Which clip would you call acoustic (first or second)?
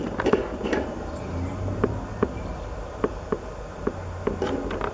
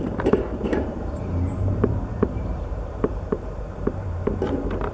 first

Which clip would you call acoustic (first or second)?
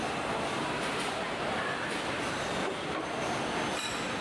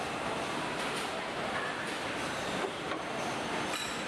first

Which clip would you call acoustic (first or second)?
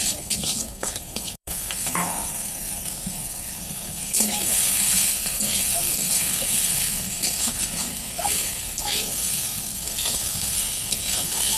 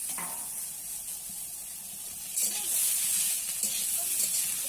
second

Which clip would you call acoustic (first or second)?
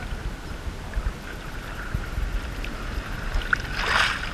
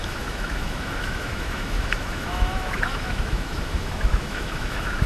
first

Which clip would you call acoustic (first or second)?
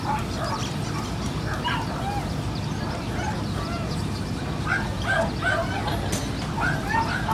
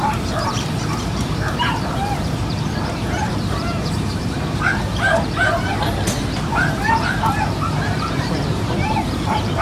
first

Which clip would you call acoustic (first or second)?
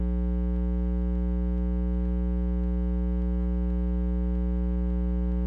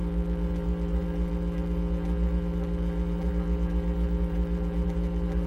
first